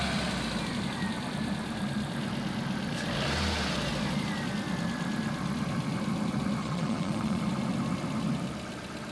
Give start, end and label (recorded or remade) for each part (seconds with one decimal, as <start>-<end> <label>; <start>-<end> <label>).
0.0-6.6 recorded; 6.6-7.4 remade; 7.4-9.1 recorded